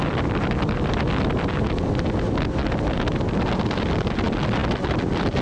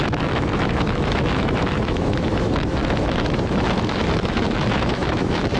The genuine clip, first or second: first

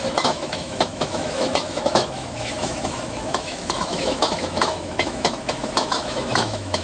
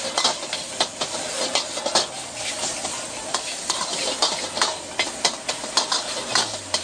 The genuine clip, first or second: second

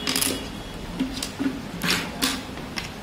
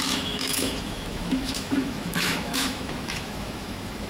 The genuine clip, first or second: first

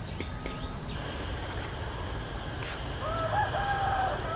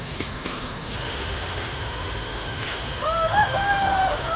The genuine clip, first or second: first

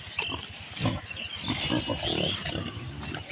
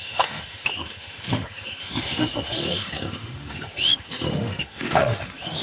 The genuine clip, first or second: first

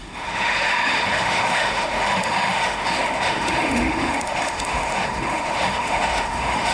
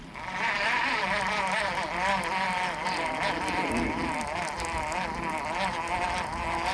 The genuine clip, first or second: second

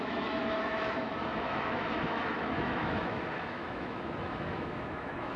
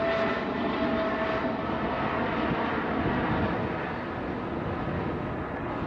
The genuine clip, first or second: second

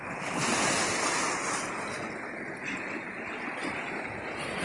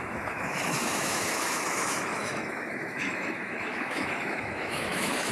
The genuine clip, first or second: first